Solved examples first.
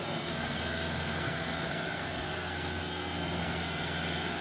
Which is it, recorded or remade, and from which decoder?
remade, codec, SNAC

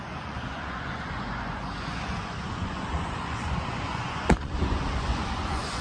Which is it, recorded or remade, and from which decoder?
remade, vocoder, Vocos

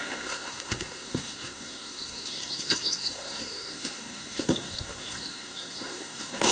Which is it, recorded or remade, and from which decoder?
remade, codec, SNAC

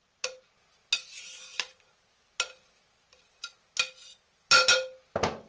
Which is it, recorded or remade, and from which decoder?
recorded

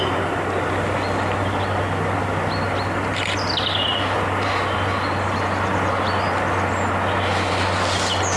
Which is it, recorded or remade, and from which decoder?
recorded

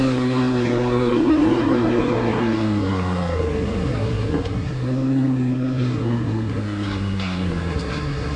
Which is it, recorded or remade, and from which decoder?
remade, codec, SNAC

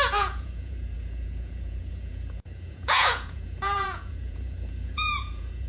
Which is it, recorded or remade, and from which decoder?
remade, vocoder, Vocos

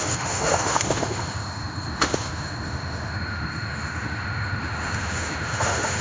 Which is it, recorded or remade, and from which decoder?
remade, autoencoder, DAC-VAE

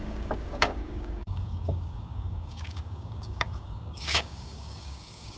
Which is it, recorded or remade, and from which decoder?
remade, codec, DAC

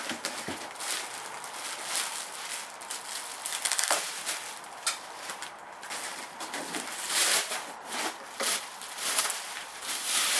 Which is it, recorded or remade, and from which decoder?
recorded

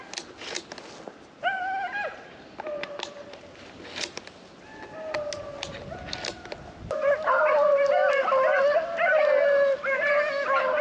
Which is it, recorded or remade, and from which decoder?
recorded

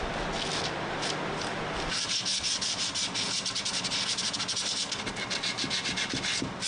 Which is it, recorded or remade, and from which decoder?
recorded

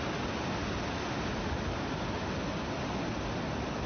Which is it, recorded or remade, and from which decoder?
recorded